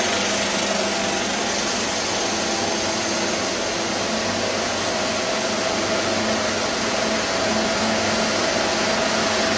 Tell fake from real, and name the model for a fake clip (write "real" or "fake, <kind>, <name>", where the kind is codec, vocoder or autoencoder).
real